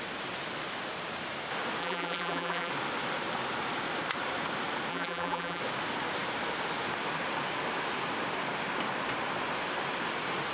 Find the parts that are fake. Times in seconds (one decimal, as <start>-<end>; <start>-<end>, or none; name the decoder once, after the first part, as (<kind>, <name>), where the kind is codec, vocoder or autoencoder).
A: 1.8-2.7 (vocoder, BigVGAN v2); 4.9-5.6